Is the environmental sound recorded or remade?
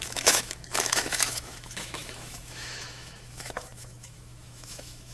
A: remade